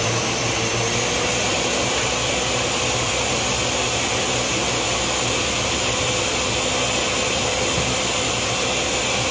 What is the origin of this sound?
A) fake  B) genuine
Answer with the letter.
B